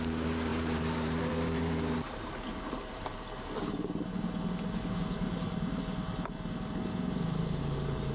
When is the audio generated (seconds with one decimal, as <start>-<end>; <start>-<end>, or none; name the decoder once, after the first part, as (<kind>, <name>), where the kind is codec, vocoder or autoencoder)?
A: 0.0-8.1 (vocoder, BigVGAN v2)